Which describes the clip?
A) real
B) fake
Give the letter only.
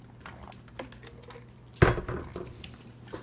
A